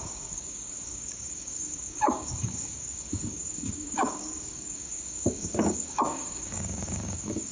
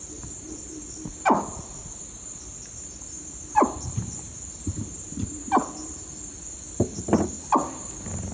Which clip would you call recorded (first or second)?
second